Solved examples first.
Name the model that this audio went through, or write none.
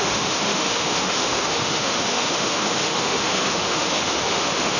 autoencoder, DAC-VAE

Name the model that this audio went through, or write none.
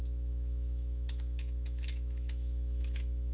autoencoder, DAC-VAE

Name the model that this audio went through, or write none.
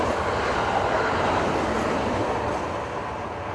none